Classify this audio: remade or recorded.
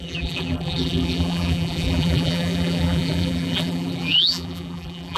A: remade